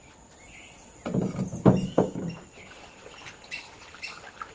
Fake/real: real